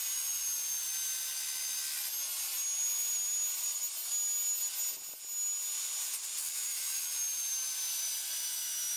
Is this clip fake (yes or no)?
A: no